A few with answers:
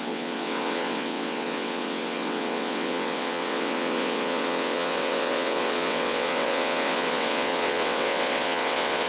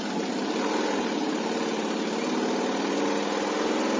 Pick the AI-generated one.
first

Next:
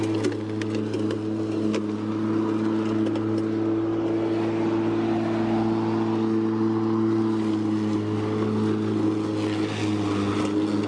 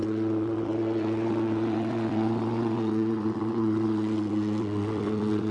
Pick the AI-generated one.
second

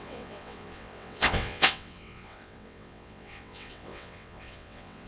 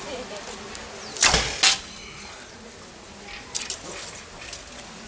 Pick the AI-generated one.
first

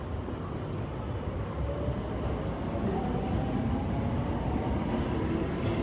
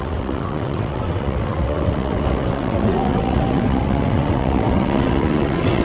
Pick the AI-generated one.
second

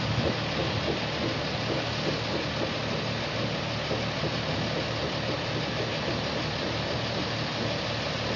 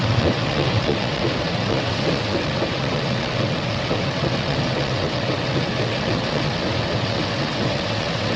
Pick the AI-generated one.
second